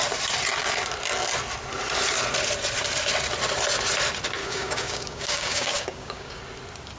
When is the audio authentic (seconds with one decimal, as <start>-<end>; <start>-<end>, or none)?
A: 0.0-4.4; 6.4-7.0